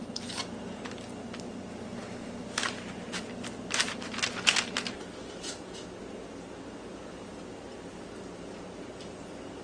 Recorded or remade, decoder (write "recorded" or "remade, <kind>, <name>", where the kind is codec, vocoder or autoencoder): recorded